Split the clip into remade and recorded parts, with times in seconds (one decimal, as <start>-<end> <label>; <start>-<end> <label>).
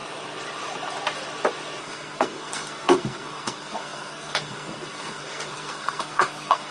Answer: 0.0-1.8 recorded; 1.8-6.7 remade